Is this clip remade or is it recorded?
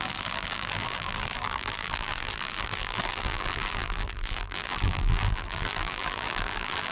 remade